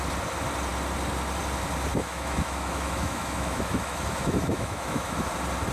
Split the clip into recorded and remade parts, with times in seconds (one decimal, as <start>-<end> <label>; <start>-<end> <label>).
0.0-1.9 recorded; 1.9-5.3 remade; 5.3-5.7 recorded